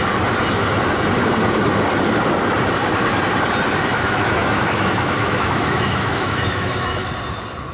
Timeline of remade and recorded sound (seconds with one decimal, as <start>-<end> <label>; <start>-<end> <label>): 0.0-3.9 recorded; 3.9-7.1 remade; 7.1-7.7 recorded